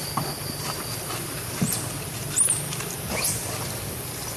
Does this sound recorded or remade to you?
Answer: recorded